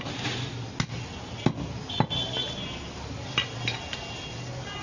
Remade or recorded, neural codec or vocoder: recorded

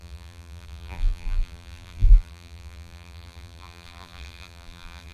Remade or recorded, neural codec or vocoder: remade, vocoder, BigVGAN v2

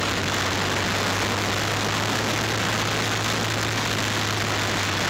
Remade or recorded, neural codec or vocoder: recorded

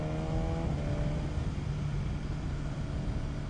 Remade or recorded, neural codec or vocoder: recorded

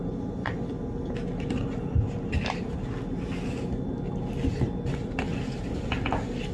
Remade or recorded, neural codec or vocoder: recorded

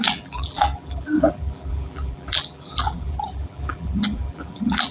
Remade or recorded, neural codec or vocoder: remade, vocoder, BigVGAN v2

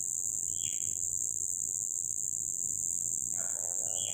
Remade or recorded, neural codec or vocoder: remade, vocoder, BigVGAN v2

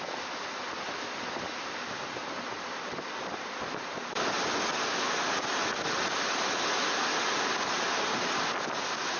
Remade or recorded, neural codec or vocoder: recorded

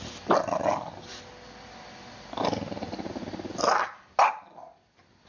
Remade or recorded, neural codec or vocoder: recorded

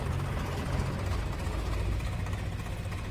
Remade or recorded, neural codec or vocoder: recorded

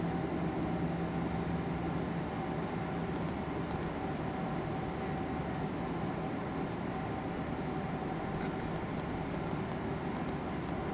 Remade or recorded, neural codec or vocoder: recorded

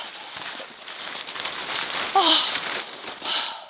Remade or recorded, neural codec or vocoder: remade, vocoder, BigVGAN v2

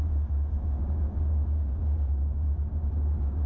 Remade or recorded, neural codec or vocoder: recorded